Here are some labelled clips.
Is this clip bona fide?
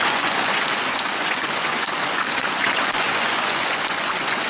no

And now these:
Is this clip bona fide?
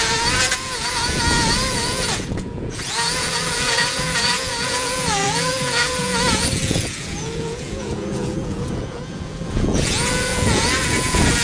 no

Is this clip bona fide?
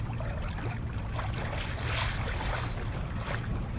yes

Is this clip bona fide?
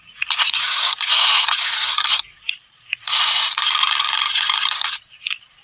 no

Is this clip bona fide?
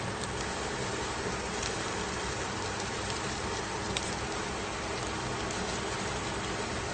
yes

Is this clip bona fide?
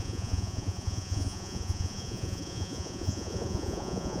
no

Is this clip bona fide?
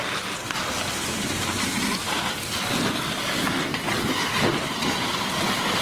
yes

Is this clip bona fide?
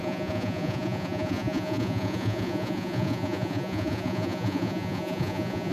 no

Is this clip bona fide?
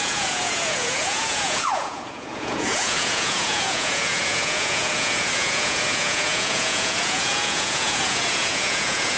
no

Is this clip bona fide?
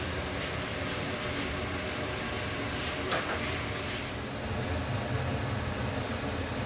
yes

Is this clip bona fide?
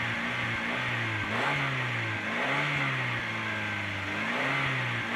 yes